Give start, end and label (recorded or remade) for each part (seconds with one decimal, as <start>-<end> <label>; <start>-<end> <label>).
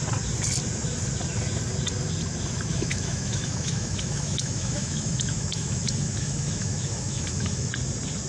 0.0-2.7 recorded; 2.7-7.7 remade; 7.7-8.3 recorded